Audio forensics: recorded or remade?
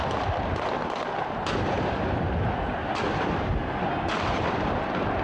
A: recorded